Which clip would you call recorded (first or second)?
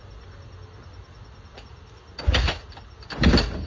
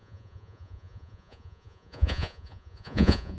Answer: first